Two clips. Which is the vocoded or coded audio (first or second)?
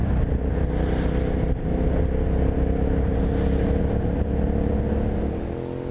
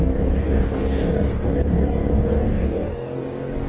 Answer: second